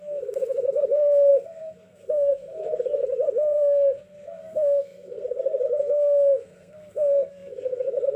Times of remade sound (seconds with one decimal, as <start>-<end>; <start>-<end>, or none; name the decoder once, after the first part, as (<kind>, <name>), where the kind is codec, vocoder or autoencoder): 0.0-8.2 (codec, SNAC)